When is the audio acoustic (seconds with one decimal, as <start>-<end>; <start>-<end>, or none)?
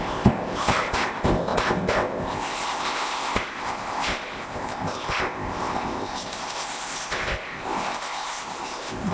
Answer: none